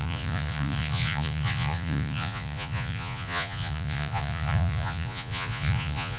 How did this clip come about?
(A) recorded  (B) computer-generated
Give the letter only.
B